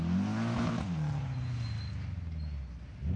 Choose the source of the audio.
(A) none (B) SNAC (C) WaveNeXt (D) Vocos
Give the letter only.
A